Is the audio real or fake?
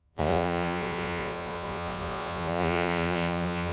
fake